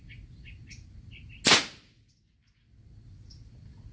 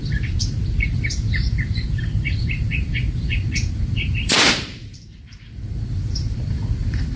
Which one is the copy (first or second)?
second